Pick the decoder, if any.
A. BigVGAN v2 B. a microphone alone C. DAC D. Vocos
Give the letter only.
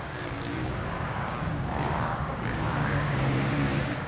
C